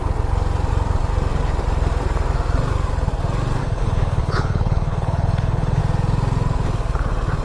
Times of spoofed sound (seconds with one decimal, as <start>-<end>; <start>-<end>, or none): 3.6-5.8